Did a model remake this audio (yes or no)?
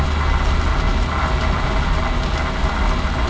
no